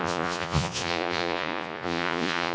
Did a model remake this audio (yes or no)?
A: yes